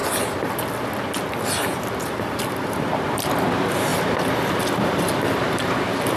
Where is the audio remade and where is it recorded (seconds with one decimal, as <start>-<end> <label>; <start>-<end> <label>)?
0.0-1.4 recorded; 1.4-6.2 remade